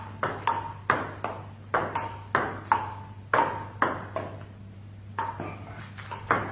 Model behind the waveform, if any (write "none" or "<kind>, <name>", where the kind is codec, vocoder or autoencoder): none